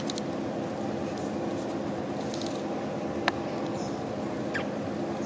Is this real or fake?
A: real